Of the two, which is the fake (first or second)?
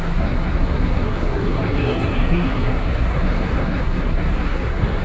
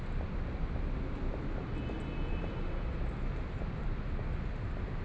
first